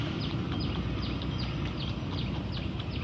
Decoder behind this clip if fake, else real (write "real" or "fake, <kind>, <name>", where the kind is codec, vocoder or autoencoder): real